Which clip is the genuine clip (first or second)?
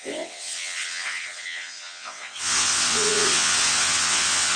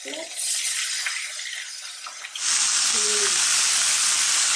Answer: second